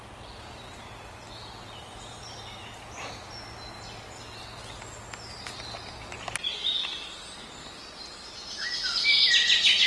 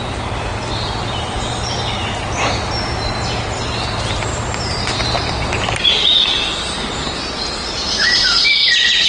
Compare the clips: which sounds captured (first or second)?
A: first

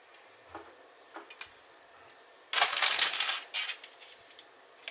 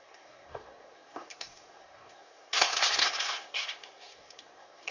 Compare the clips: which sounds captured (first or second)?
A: first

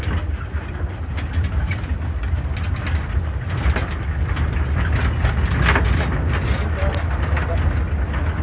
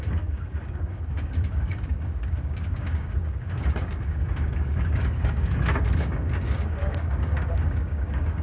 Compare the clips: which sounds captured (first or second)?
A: first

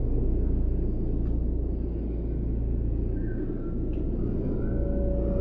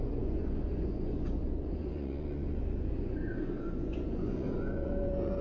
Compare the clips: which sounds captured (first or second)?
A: first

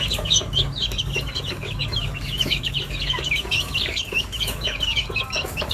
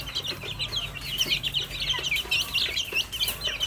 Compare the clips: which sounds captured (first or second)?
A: second